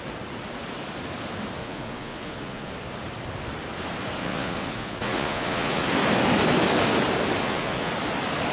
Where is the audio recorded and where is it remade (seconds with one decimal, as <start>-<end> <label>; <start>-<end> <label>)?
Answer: 0.0-1.6 recorded; 1.6-2.7 remade; 2.7-4.2 recorded; 4.2-5.9 remade; 5.9-7.4 recorded; 7.4-7.9 remade; 7.9-8.5 recorded